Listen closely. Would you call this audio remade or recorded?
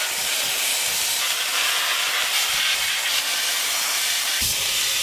recorded